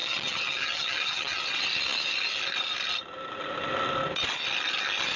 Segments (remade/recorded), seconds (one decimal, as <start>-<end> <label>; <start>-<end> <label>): 0.0-1.4 remade; 1.4-5.2 recorded